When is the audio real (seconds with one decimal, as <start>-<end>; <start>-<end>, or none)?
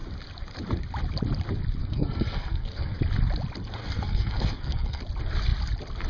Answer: 0.0-1.8; 3.0-3.8; 5.0-6.1